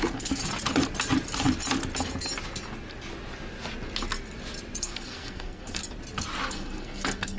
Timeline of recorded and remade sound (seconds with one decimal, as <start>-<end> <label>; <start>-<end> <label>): 0.0-0.4 remade; 0.4-4.8 recorded; 4.8-5.8 remade; 5.8-6.5 recorded; 6.5-7.4 remade